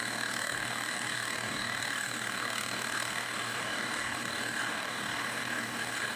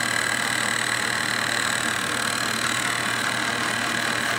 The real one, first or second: second